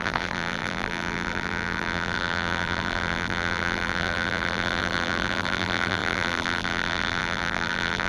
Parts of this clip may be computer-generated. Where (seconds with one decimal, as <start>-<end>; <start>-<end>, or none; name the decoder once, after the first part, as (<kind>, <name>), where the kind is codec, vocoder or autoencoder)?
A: 0.0-8.1 (vocoder, BigVGAN v2)